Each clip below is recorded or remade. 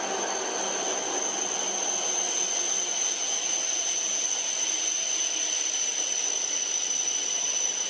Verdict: recorded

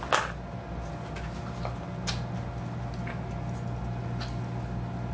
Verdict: recorded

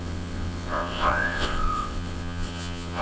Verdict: remade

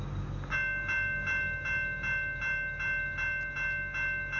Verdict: recorded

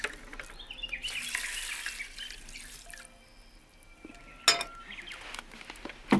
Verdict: recorded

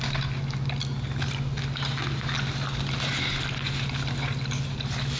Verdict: recorded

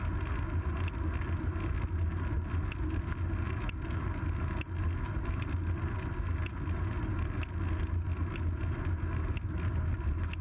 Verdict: recorded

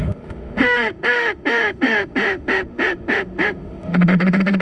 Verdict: remade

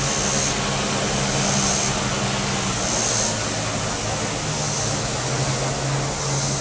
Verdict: recorded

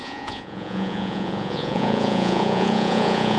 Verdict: remade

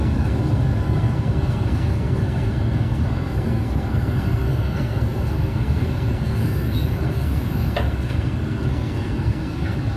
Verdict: remade